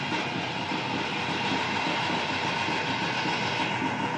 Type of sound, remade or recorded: recorded